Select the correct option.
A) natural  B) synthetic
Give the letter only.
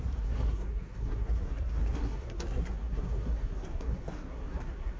B